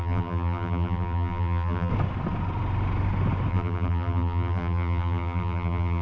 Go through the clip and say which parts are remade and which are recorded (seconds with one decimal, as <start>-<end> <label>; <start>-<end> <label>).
0.0-1.9 remade; 1.9-3.5 recorded; 3.5-6.0 remade